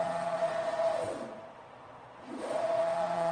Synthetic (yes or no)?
yes